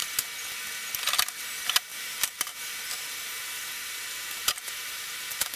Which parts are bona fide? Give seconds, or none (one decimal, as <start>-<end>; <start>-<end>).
0.0-1.3

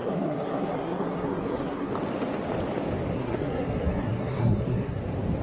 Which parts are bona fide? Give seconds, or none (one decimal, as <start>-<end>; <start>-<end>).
1.9-3.1; 5.0-5.4

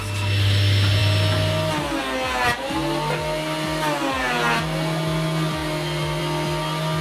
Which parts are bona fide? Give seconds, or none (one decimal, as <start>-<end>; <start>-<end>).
0.0-7.0

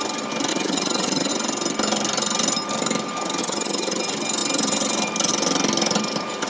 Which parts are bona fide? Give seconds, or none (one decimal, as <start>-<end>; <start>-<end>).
0.0-0.5; 1.3-3.4; 4.0-6.5

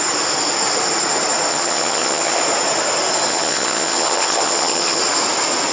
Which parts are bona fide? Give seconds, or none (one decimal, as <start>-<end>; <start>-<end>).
0.0-1.5; 2.4-3.3; 5.0-5.7

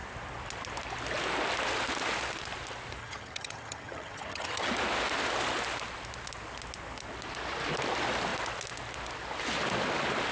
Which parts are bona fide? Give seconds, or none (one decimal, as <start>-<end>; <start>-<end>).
0.0-3.0; 4.7-10.3